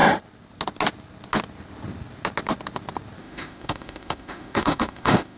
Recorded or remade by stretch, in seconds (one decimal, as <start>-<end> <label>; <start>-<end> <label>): 0.0-3.2 recorded; 3.2-5.4 remade